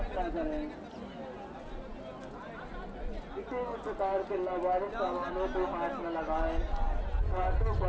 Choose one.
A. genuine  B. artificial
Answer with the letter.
A